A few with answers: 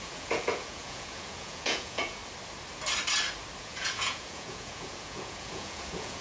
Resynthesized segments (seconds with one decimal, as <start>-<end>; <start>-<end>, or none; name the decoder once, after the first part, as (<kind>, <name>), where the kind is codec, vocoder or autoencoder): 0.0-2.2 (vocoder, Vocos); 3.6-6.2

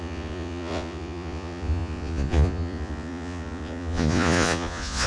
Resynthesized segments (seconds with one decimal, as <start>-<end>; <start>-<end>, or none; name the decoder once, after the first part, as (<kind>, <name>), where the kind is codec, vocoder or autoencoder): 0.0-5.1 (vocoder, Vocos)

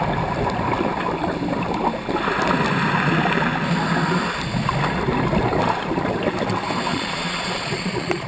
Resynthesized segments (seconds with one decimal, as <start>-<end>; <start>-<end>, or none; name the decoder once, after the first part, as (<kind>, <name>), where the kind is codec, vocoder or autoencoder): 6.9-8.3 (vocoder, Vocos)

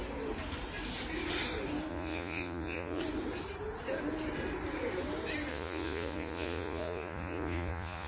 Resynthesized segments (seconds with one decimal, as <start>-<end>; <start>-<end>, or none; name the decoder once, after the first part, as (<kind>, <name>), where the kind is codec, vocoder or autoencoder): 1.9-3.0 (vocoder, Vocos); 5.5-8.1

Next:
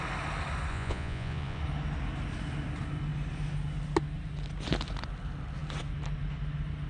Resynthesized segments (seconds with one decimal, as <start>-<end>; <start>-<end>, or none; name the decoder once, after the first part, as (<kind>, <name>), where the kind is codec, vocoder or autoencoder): 0.7-1.6 (vocoder, Vocos)